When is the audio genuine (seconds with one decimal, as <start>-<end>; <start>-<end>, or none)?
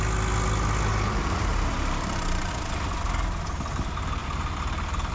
0.0-0.9; 2.5-5.1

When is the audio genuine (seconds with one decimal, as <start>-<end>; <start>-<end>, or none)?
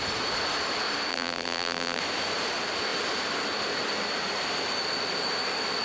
0.0-1.1; 2.0-5.8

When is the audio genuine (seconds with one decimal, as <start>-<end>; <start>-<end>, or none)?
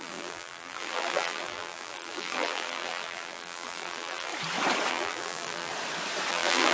4.3-4.9; 5.7-6.3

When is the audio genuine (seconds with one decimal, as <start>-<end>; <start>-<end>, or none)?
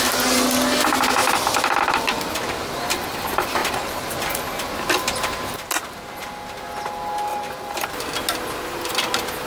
0.0-1.2; 1.8-7.3; 7.9-9.5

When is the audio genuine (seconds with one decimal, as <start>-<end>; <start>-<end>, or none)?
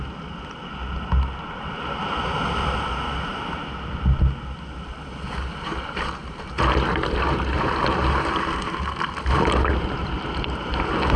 0.0-5.7; 10.2-11.2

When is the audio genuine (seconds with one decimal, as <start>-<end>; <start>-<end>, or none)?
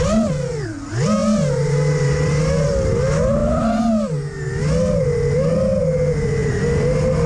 0.0-1.2; 2.3-7.3